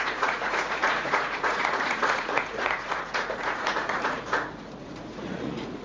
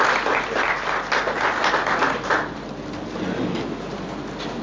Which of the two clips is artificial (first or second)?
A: first